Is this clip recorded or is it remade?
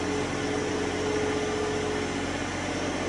recorded